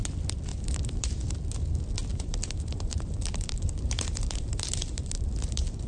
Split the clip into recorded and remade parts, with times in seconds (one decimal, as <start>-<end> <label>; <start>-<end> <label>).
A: 0.0-0.5 recorded; 0.5-1.3 remade; 1.3-2.1 recorded; 2.1-5.9 remade

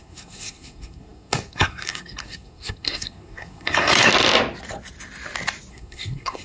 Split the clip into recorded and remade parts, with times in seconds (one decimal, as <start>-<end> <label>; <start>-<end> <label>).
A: 0.0-4.1 remade; 4.1-5.7 recorded; 5.7-6.4 remade

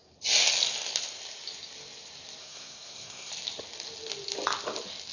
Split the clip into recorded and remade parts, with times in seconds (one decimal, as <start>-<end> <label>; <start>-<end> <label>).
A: 0.0-2.4 recorded; 2.4-3.3 remade; 3.3-5.1 recorded

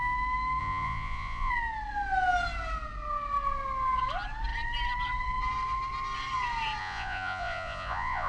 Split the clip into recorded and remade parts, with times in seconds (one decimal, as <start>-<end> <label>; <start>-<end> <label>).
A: 0.0-0.6 recorded; 0.6-1.5 remade; 1.5-6.8 recorded; 6.8-8.3 remade

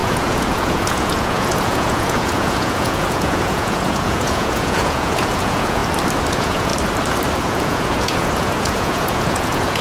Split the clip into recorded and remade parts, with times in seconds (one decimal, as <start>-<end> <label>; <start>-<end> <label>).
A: 0.0-5.8 remade; 5.8-6.3 recorded; 6.3-6.7 remade; 6.7-7.4 recorded; 7.4-9.8 remade

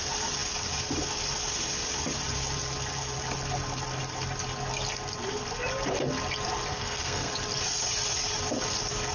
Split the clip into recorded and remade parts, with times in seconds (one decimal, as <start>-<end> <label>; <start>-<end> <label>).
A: 0.0-6.7 recorded; 6.7-7.3 remade; 7.3-9.1 recorded

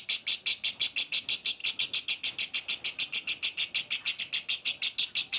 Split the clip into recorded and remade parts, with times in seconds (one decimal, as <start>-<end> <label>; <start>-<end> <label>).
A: 0.0-5.4 recorded

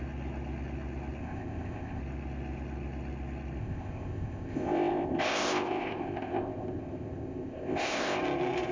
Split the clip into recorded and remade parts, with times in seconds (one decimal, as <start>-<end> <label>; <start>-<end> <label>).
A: 0.0-1.2 recorded; 1.2-2.0 remade; 2.0-3.6 recorded; 3.6-8.2 remade; 8.2-8.7 recorded